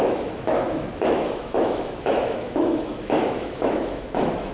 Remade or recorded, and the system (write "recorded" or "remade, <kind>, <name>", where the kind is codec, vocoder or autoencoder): remade, autoencoder, DAC-VAE